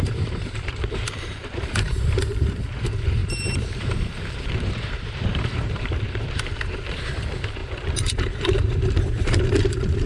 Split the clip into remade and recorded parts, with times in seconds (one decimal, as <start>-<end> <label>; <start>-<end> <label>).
0.0-10.1 remade